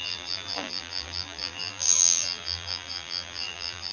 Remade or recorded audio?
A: remade